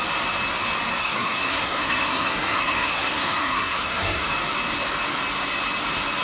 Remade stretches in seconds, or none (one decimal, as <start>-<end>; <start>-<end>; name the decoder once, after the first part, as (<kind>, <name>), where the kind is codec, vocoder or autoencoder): 0.9-4.3 (codec, SNAC)